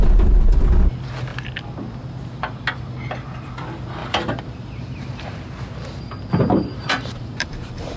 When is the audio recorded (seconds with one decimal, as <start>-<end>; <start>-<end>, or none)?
0.0-4.0